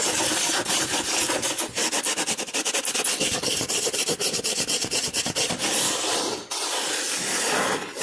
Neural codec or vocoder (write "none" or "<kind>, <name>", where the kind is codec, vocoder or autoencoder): none